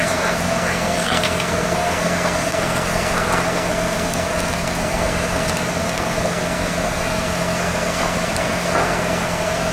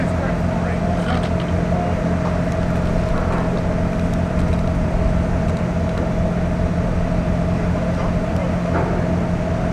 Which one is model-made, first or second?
first